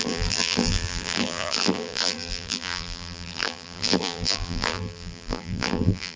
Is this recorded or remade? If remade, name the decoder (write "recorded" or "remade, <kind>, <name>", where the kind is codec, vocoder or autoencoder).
remade, vocoder, BigVGAN v2